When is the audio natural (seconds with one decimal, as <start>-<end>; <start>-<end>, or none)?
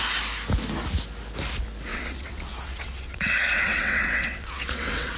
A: 0.0-1.9